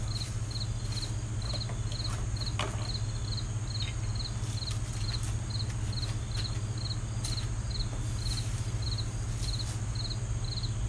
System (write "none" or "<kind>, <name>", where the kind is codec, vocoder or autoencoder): none